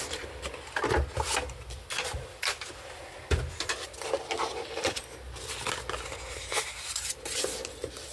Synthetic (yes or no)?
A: no